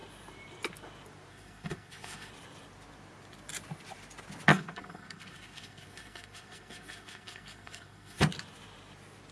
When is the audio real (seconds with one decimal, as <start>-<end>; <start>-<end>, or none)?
0.0-1.3; 2.3-4.5; 8.2-9.3

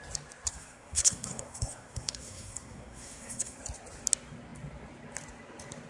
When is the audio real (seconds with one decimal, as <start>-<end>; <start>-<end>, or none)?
0.0-0.5; 3.6-5.9

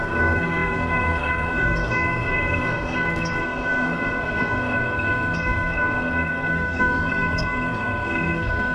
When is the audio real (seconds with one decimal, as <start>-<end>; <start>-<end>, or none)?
none

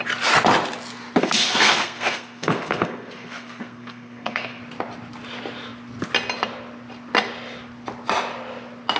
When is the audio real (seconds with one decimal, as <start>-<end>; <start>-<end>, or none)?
0.0-1.2; 4.6-9.0

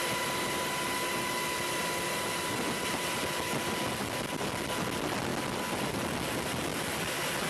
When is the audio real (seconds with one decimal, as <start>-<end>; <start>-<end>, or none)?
0.0-7.5

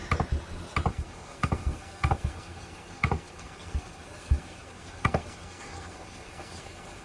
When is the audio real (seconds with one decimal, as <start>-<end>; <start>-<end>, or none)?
0.0-0.9